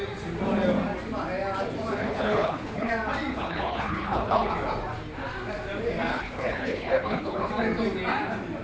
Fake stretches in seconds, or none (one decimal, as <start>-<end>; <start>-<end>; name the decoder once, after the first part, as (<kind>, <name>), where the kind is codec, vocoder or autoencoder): 2.0-2.9 (codec, HILCodec); 3.3-4.5; 6.1-7.5